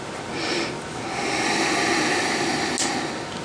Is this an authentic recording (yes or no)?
yes